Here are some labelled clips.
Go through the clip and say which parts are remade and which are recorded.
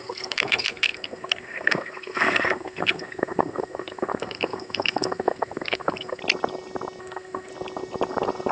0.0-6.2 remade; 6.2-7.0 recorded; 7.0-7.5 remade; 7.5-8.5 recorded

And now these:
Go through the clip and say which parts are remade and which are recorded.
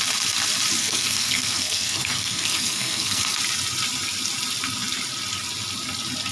0.0-0.8 recorded; 0.8-3.4 remade; 3.4-6.3 recorded